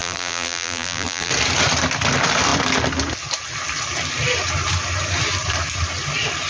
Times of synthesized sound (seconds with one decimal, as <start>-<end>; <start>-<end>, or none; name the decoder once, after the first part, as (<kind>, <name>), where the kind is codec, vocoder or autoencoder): 0.0-1.3 (vocoder, BigVGAN v2)